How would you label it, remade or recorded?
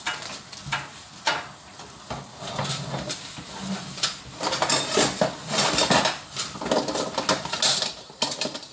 recorded